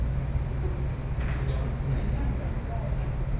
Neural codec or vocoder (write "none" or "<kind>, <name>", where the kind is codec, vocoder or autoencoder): none